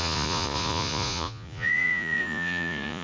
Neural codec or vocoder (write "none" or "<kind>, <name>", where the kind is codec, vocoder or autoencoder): vocoder, Vocos